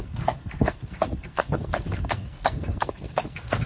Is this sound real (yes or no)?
no